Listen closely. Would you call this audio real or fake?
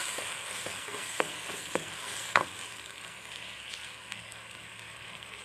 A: fake